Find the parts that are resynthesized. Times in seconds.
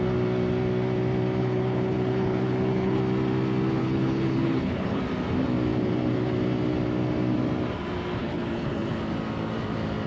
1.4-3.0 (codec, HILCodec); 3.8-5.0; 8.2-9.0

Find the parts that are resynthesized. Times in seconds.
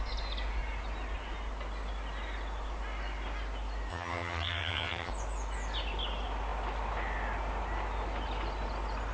3.9-5.1 (vocoder, HiFi-GAN)